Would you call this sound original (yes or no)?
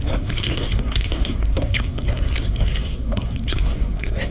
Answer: no